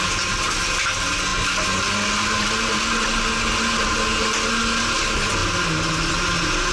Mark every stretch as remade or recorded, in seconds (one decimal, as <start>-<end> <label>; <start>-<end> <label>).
0.0-6.7 recorded